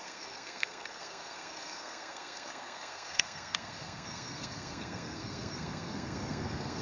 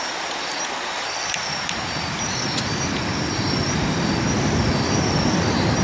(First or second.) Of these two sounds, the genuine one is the second